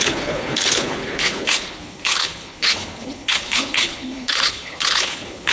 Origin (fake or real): fake